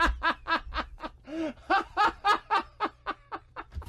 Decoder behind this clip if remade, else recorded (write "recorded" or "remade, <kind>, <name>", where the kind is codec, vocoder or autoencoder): recorded